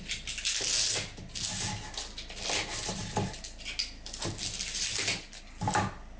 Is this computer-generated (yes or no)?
no